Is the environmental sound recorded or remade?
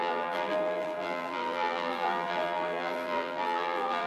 remade